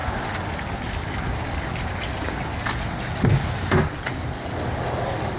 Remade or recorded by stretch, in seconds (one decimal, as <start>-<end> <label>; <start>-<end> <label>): 0.0-5.4 recorded

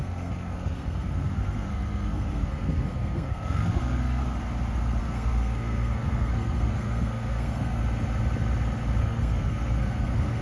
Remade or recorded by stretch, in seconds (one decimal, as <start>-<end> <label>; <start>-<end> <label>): 0.0-4.2 remade; 4.2-5.0 recorded; 5.0-7.8 remade; 7.8-9.0 recorded; 9.0-10.4 remade

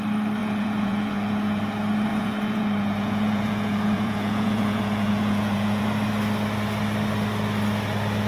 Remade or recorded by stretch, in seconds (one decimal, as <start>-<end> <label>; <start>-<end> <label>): 0.0-0.4 recorded; 0.4-1.6 remade; 1.6-2.1 recorded; 2.1-5.8 remade; 5.8-8.3 recorded